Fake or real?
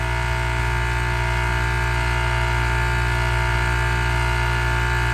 real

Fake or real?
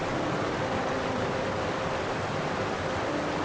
real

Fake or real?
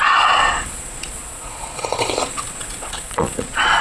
fake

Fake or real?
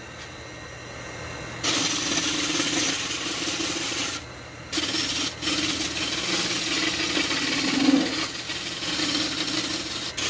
real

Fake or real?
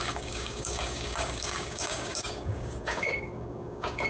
fake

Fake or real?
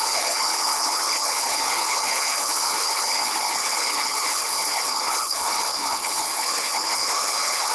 fake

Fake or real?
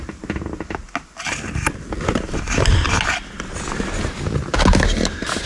real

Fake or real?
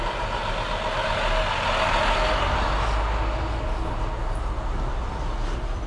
real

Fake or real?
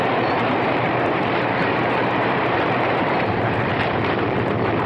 fake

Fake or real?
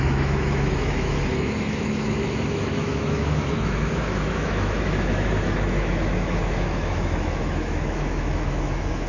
fake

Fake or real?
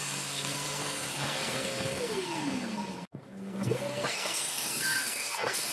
fake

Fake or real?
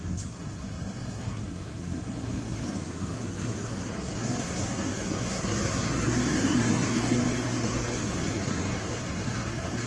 fake